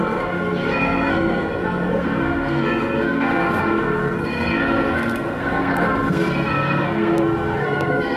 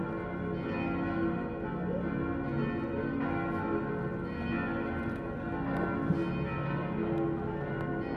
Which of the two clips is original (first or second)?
second